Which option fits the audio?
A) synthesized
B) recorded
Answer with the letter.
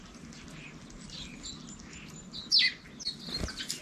B